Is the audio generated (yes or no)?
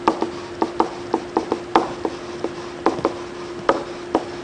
no